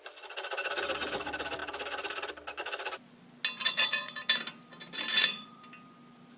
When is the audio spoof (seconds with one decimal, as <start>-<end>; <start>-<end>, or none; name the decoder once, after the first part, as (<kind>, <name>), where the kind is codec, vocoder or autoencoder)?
3.6-4.2 (vocoder, Vocos); 5.1-5.6